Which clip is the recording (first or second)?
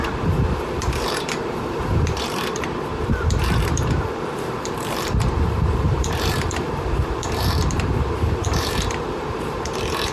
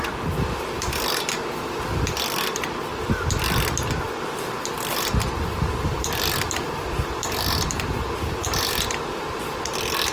second